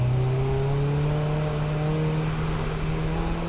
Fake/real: real